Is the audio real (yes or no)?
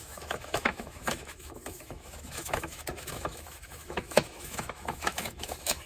no